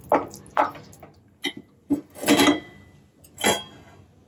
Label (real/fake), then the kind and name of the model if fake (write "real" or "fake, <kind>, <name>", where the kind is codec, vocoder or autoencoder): real